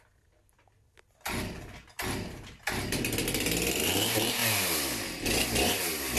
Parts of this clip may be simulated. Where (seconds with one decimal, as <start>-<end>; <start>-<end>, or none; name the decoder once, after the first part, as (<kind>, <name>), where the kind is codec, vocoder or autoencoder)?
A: none